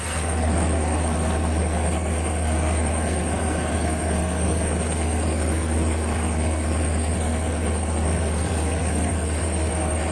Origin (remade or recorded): remade